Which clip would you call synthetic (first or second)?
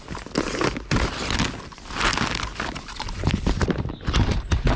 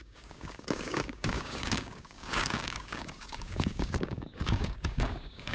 second